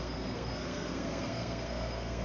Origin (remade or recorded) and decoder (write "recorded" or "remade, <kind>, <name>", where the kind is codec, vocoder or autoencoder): remade, codec, SNAC